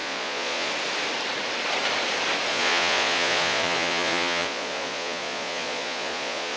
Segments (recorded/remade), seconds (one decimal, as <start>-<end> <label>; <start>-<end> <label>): 0.0-0.7 remade; 0.7-2.5 recorded; 2.5-6.6 remade